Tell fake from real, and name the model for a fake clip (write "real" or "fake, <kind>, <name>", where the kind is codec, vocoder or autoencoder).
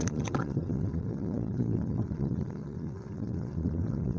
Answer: fake, vocoder, Vocos